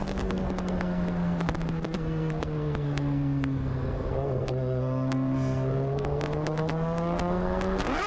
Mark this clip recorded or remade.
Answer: remade